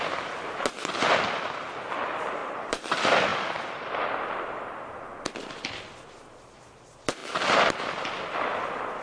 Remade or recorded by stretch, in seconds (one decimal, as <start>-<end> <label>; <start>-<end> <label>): 0.0-2.4 recorded; 2.4-2.9 remade; 2.9-3.3 recorded; 3.3-3.9 remade; 3.9-9.0 recorded